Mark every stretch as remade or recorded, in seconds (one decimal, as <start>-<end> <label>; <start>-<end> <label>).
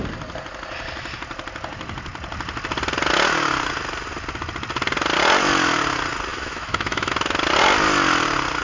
0.0-6.3 recorded; 6.3-7.1 remade; 7.1-8.6 recorded